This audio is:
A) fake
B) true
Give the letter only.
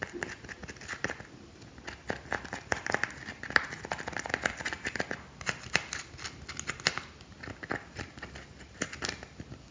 B